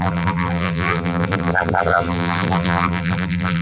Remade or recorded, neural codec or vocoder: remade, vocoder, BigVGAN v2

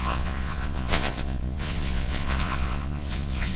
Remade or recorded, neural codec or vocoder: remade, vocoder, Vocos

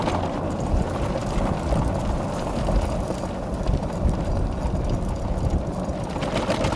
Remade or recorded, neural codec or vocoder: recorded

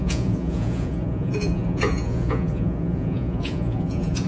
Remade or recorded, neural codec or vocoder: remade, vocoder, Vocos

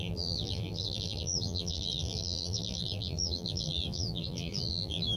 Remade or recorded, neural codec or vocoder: remade, vocoder, BigVGAN v2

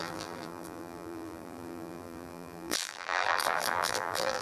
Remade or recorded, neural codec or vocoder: remade, vocoder, BigVGAN v2